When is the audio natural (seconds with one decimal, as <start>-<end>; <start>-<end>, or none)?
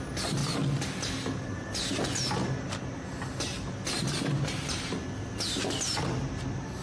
0.0-6.8